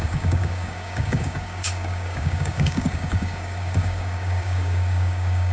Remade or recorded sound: remade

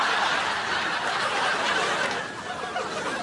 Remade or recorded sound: recorded